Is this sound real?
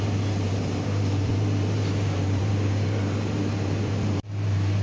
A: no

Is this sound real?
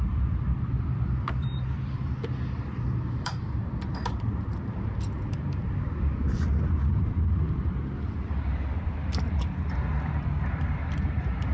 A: no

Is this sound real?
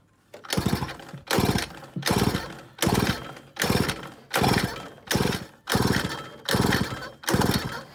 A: yes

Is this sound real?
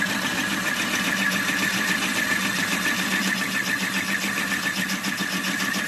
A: yes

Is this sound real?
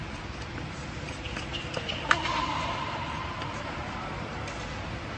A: yes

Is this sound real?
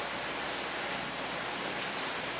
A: yes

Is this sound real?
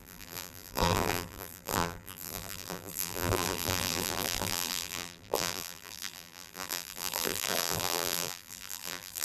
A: no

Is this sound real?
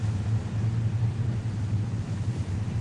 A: yes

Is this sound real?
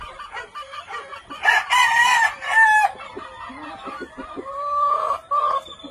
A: yes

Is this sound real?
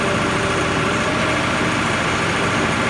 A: no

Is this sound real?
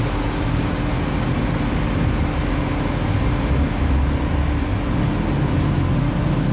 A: yes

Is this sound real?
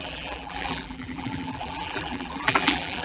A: no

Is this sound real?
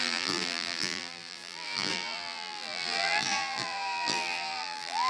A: no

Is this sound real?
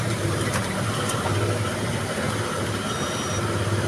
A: no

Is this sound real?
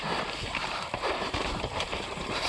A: no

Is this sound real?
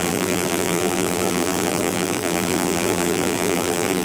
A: no